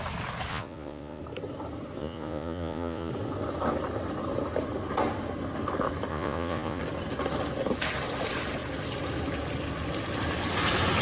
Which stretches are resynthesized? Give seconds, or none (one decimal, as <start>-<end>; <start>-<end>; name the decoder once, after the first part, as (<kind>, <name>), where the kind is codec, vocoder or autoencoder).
0.5-1.2 (vocoder, Vocos); 2.0-3.1; 6.1-6.8